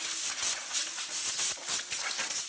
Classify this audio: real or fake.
real